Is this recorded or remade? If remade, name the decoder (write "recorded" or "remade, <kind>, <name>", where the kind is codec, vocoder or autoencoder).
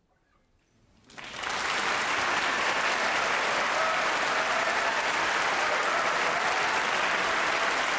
recorded